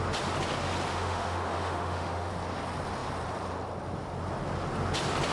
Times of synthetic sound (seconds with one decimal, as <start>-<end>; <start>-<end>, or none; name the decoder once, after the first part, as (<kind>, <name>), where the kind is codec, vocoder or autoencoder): 0.9-2.3 (autoencoder, DAC-VAE)